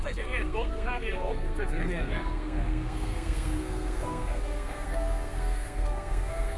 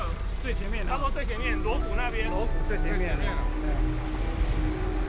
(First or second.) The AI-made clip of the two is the first